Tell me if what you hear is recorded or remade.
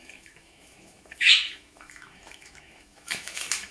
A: remade